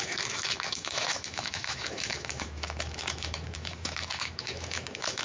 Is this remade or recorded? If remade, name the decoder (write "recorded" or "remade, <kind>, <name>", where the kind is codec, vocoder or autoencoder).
remade, autoencoder, DAC-VAE